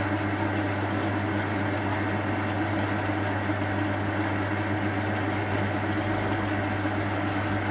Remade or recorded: recorded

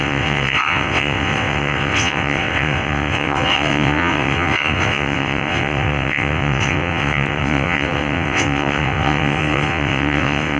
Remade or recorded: remade